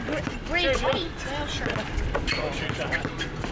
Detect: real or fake real